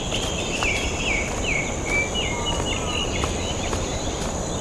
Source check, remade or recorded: recorded